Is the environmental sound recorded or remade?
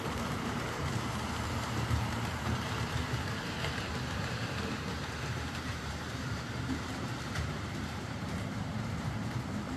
remade